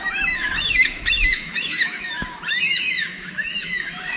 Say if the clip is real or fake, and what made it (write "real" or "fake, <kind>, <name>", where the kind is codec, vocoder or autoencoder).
fake, autoencoder, DAC-VAE